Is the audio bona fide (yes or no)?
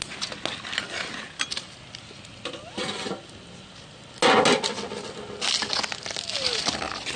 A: yes